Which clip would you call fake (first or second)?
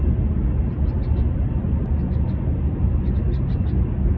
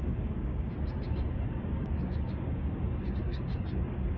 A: second